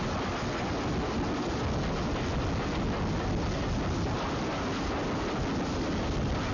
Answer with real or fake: real